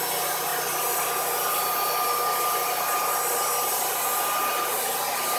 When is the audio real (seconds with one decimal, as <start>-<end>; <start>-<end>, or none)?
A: 0.0-5.4